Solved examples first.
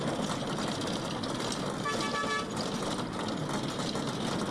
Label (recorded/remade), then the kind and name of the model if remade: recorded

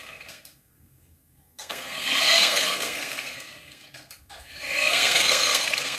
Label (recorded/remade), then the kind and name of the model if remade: remade, codec, SNAC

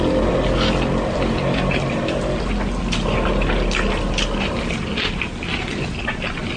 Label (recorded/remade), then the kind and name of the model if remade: recorded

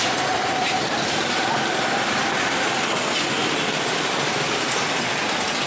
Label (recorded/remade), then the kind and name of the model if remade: recorded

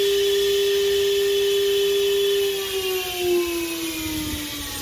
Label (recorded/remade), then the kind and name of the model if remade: recorded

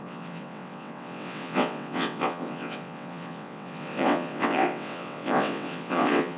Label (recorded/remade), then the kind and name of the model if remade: remade, vocoder, WaveNeXt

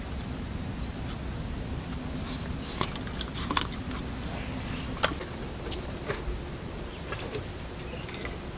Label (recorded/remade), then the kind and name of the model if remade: recorded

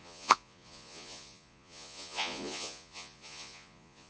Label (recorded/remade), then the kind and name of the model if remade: remade, vocoder, Vocos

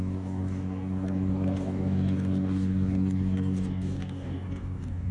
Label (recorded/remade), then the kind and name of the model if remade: remade, codec, DAC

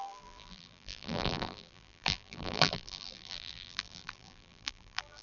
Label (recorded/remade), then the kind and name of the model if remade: remade, vocoder, BigVGAN v2